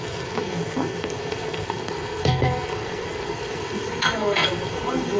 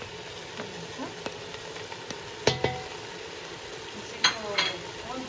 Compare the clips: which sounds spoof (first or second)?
first